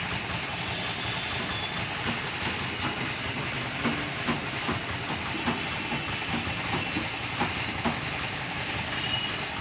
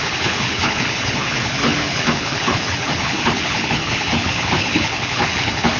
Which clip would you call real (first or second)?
first